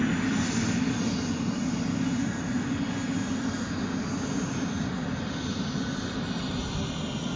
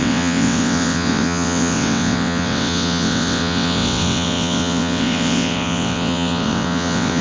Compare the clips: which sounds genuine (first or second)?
first